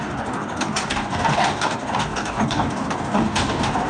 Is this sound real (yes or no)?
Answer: no